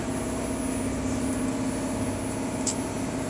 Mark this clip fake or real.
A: real